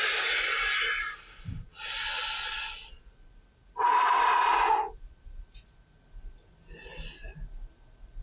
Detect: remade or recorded recorded